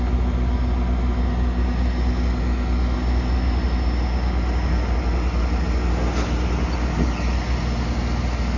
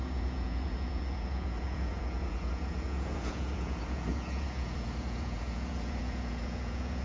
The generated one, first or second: second